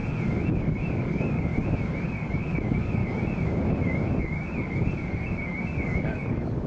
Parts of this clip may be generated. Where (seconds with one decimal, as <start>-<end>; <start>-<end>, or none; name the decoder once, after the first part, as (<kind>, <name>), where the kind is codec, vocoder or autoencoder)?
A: 0.6-1.5 (codec, DAC); 2.1-3.0; 4.2-6.7